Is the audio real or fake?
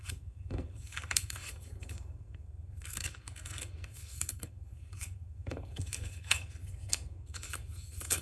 fake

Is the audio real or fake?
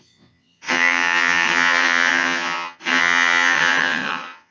fake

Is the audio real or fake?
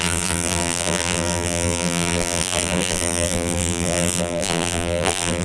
fake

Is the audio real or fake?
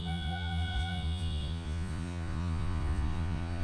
fake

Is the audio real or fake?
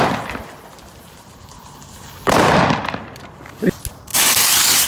real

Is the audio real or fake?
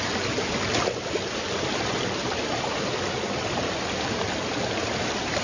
real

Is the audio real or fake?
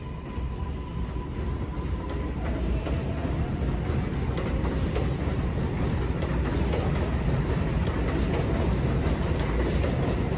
real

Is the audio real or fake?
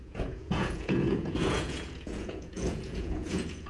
fake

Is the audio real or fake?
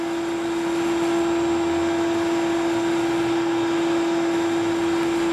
real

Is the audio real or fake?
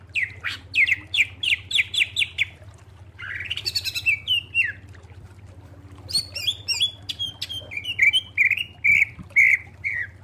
real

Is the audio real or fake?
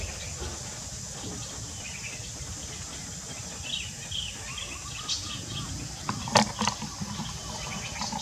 real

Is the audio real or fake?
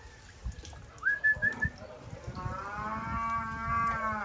real